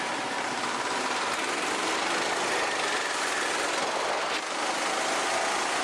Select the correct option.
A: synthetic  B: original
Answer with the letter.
B